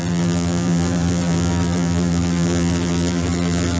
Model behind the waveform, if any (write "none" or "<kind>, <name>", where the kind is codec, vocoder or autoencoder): vocoder, BigVGAN v2